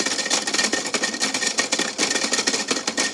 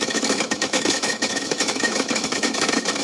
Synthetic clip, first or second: second